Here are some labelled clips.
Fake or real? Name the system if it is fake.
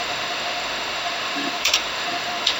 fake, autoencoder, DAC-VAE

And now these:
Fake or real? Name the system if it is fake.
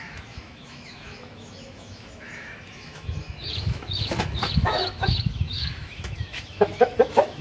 fake, autoencoder, DAC-VAE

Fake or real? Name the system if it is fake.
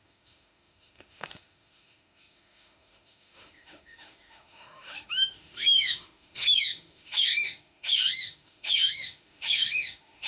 fake, autoencoder, DAC-VAE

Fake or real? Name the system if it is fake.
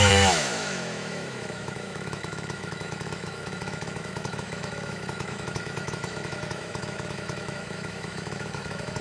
fake, autoencoder, DAC-VAE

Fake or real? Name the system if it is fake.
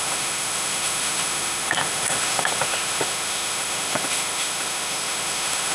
fake, autoencoder, DAC-VAE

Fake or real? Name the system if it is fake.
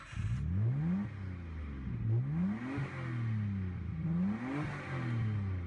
real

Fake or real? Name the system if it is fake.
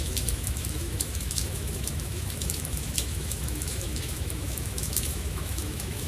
fake, autoencoder, DAC-VAE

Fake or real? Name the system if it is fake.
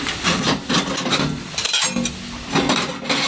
real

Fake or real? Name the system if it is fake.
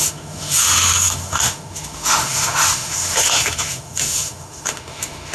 fake, autoencoder, DAC-VAE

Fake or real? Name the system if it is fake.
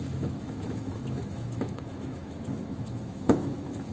fake, autoencoder, DAC-VAE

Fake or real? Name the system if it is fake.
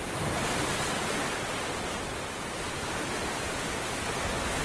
real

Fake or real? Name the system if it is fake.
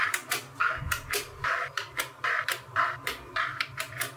real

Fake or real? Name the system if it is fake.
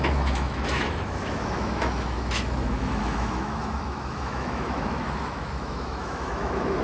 fake, autoencoder, DAC-VAE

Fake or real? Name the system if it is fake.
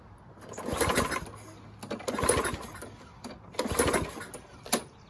real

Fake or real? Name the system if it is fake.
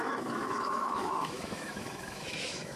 fake, autoencoder, DAC-VAE